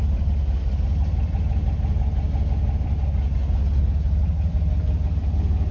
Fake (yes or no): no